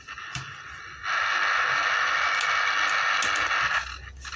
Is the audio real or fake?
real